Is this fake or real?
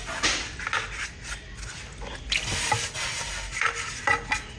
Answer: real